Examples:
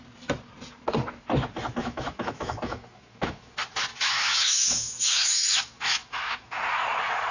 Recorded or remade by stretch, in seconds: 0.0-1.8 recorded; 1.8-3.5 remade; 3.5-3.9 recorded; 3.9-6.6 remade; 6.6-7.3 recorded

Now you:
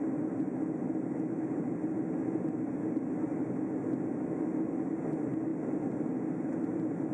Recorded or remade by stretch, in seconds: 0.0-7.1 recorded

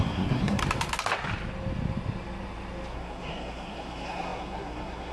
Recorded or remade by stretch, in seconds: 0.0-0.6 remade; 0.6-2.9 recorded; 2.9-5.1 remade

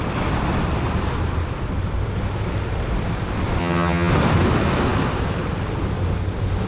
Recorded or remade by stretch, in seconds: 0.0-3.6 recorded; 3.6-4.1 remade; 4.1-6.7 recorded

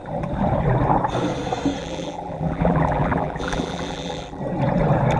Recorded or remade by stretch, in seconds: 0.0-1.8 recorded; 1.8-4.4 remade; 4.4-5.2 recorded